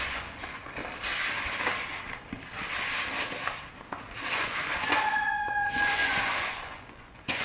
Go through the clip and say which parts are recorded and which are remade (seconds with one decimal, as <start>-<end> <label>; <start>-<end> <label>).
0.0-0.8 remade; 0.8-4.3 recorded; 4.3-7.4 remade